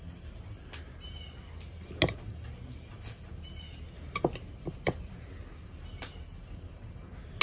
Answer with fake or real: real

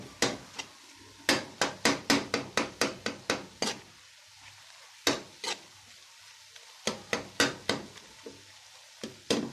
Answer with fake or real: real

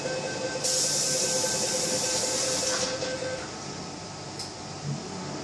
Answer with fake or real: real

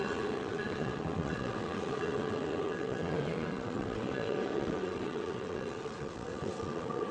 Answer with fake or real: fake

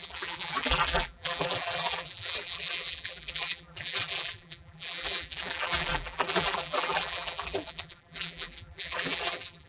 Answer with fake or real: fake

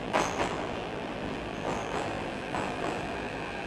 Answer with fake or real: fake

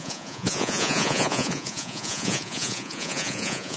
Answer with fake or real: fake